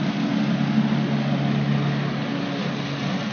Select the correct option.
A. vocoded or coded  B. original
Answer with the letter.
B